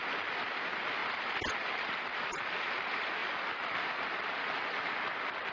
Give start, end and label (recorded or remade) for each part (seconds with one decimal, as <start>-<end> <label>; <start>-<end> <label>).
0.0-5.5 recorded